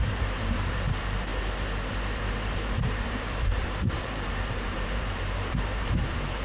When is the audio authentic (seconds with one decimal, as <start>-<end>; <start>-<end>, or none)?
1.3-1.9